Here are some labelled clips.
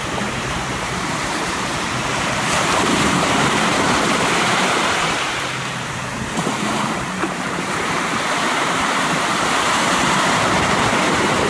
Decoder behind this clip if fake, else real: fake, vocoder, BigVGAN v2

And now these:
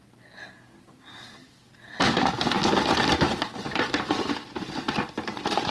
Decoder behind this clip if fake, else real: real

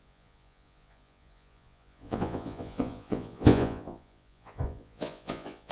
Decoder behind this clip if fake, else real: fake, vocoder, Vocos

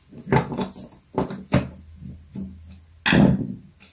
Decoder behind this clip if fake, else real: real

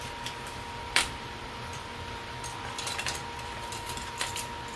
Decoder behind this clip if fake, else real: fake, vocoder, BigVGAN v2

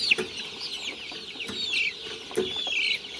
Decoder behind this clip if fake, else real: real